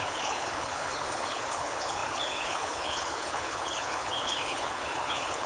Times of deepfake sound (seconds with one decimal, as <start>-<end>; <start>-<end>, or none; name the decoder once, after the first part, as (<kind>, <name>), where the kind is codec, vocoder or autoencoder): 0.0-5.5 (codec, HILCodec)